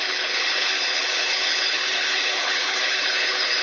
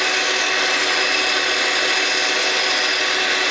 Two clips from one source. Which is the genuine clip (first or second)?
second